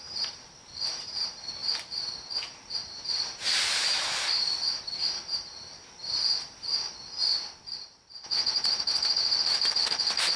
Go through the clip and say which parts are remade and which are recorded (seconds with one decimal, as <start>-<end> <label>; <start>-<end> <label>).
0.0-1.6 remade; 1.6-2.5 recorded; 2.5-10.4 remade